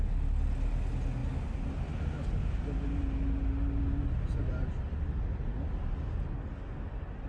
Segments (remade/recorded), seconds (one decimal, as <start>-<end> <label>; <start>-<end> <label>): 0.0-7.3 recorded